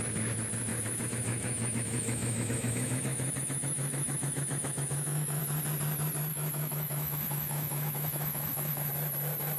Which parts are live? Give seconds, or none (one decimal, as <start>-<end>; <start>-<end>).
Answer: 0.0-0.7; 5.4-6.3; 8.9-9.6